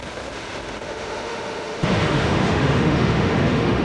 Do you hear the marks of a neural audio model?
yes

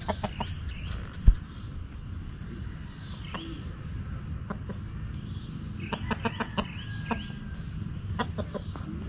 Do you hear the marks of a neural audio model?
no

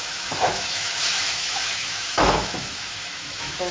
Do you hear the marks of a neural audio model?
yes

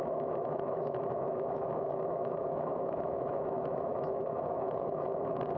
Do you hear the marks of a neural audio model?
yes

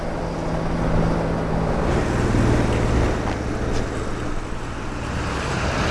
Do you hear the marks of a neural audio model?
no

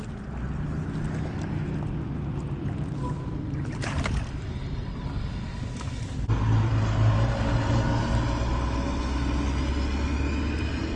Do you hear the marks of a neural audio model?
no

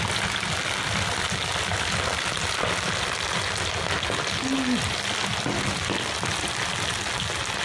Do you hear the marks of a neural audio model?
no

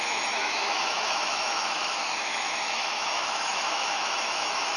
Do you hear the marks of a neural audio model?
yes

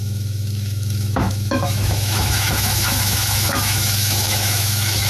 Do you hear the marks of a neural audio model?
yes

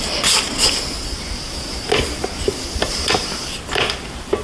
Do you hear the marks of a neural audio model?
no